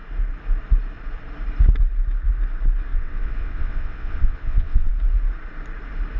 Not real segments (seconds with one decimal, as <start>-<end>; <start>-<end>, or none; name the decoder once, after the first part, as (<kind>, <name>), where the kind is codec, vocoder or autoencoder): 2.9-4.9 (vocoder, WaveNeXt)